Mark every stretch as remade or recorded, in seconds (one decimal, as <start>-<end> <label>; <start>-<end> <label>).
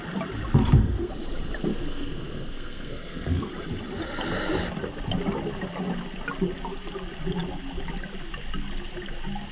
0.0-0.6 recorded; 0.6-1.1 remade; 1.1-1.7 recorded; 1.7-3.5 remade; 3.5-9.5 recorded